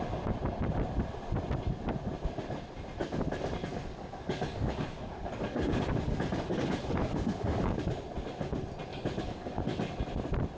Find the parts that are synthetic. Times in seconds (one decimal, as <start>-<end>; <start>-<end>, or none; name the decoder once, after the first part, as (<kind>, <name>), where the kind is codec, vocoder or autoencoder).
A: 3.7-7.9 (codec, DAC); 8.9-9.6